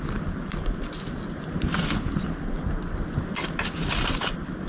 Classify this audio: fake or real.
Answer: real